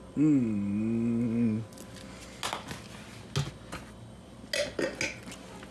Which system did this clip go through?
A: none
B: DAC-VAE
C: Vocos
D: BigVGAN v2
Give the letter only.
A